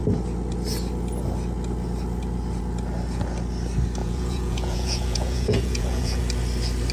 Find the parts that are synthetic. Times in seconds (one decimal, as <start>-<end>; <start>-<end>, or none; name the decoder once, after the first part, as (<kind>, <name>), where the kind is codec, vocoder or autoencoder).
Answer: 4.0-6.2 (vocoder, Vocos)